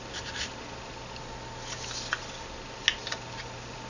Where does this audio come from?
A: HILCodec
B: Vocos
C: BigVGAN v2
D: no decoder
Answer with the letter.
D